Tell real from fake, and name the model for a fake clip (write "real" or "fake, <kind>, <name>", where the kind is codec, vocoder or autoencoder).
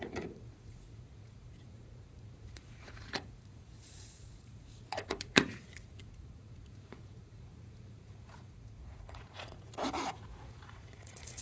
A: fake, vocoder, Vocos